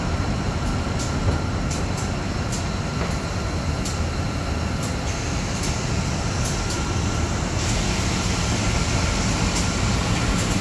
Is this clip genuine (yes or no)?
yes